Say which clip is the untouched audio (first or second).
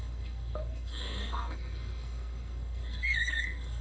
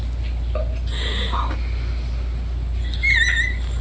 second